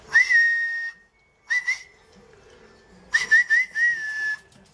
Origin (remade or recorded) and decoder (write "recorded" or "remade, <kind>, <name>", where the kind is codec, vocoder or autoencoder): recorded